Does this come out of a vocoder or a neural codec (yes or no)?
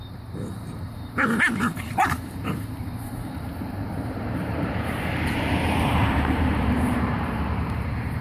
yes